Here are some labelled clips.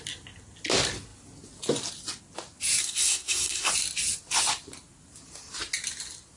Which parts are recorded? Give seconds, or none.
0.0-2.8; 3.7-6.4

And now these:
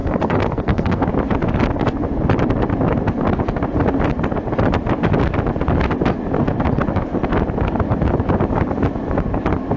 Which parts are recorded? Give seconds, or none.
1.0-9.8

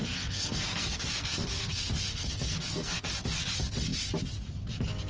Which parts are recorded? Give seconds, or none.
3.1-5.1